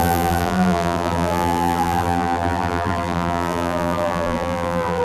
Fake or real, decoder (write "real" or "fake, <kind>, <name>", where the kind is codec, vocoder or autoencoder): fake, vocoder, BigVGAN v2